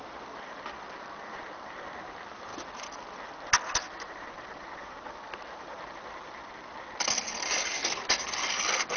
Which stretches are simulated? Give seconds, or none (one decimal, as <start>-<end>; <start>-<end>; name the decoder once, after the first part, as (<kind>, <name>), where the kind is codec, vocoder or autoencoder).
none